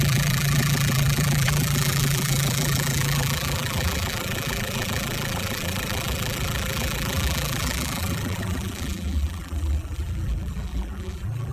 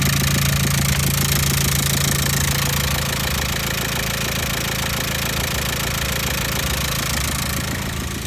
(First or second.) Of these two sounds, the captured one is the second